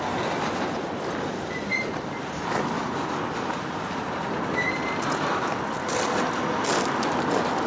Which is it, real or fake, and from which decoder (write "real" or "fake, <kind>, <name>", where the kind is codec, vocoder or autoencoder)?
real